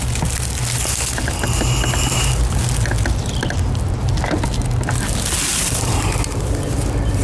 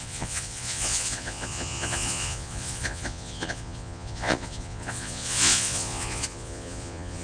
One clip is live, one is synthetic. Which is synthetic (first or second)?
second